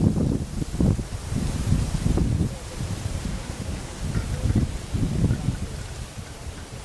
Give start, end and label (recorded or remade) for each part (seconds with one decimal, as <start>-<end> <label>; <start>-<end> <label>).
0.0-3.3 recorded; 3.3-4.0 remade; 4.0-6.8 recorded